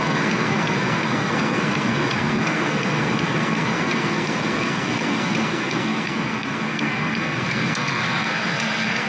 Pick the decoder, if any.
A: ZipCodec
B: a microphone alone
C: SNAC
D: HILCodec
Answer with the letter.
C